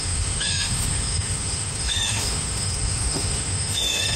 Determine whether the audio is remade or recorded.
remade